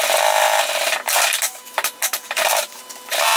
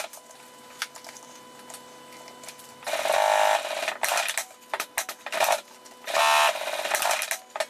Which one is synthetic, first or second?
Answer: first